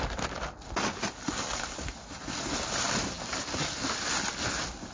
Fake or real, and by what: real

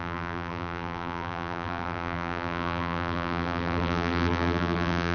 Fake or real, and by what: fake, vocoder, BigVGAN v2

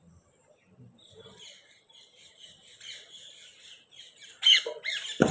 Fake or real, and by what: fake, vocoder, BigVGAN v2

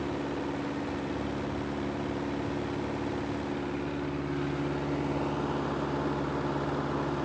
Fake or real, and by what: real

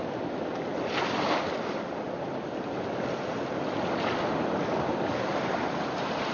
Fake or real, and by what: real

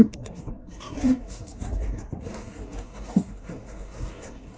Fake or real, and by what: fake, codec, SNAC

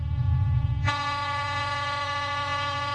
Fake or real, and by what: fake, vocoder, Vocos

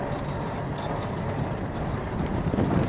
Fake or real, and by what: real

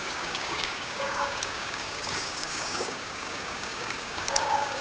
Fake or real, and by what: fake, codec, DAC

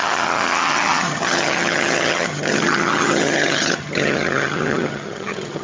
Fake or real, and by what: fake, vocoder, HiFi-GAN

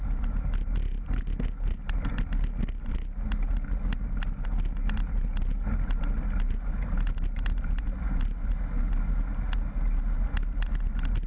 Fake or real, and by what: real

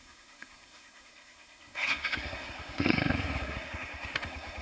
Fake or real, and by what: fake, codec, SNAC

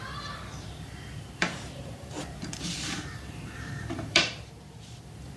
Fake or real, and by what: fake, vocoder, BigVGAN v2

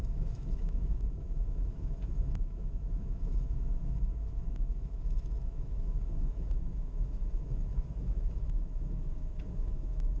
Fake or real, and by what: fake, autoencoder, DAC-VAE